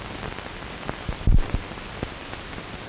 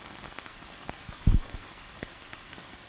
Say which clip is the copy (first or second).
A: second